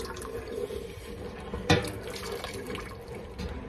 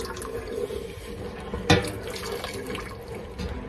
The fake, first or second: first